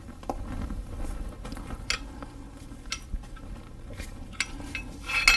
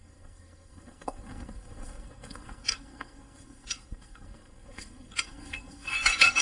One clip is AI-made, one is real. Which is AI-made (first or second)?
second